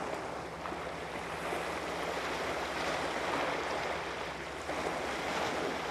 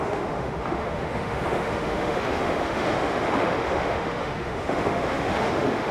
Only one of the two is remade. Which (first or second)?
second